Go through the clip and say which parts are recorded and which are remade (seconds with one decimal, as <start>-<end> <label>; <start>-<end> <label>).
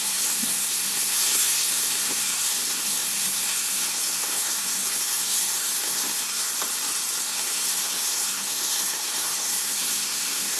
0.0-6.5 remade; 6.5-7.2 recorded; 7.2-10.6 remade